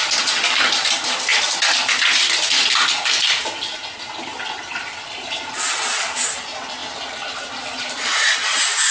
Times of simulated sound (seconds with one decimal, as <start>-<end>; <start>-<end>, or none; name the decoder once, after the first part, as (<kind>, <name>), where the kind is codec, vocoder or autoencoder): none